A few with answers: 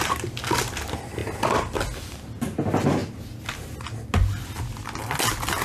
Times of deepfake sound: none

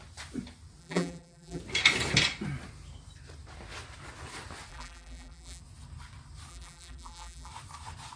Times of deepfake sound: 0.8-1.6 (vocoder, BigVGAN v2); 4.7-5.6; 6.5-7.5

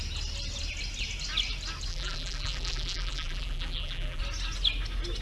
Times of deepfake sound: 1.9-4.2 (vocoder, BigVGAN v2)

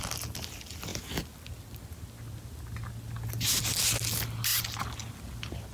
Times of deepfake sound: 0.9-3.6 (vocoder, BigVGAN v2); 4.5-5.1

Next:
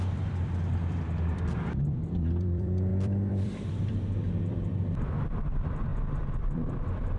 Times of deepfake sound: 0.0-5.9 (vocoder, BigVGAN v2); 6.4-7.2